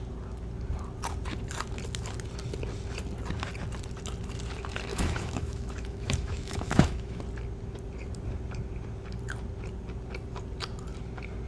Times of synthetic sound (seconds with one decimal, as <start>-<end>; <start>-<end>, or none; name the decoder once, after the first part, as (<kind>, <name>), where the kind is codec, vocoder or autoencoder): 4.9-7.2 (autoencoder, DAC-VAE)